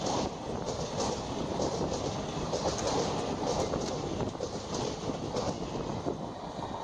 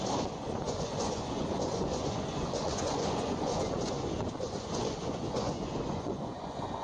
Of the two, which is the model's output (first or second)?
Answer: second